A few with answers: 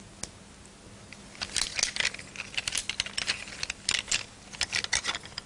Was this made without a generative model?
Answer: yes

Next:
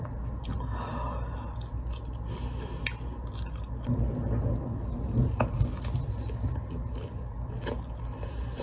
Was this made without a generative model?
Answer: yes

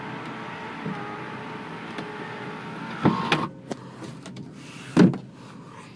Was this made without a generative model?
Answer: yes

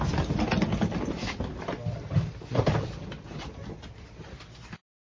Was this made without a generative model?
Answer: yes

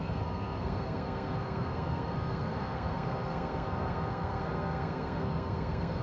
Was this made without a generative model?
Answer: no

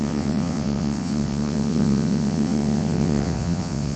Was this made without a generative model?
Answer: no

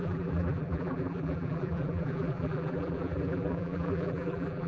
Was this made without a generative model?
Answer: no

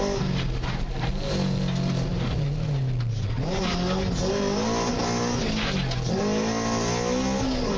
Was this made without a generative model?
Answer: yes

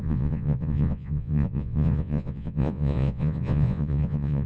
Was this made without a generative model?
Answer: no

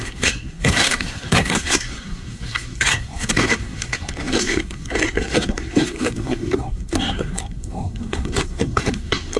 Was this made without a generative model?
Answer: no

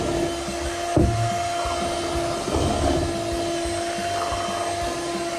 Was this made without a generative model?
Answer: yes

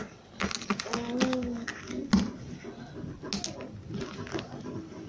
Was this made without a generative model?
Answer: yes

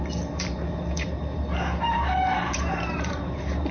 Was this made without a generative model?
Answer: no